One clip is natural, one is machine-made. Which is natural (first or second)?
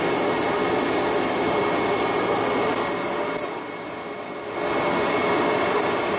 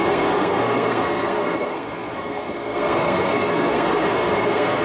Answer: first